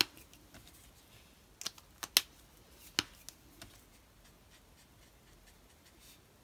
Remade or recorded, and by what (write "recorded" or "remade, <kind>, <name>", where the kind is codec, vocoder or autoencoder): recorded